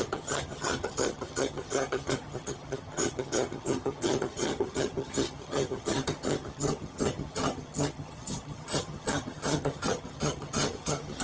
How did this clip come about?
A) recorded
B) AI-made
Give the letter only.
B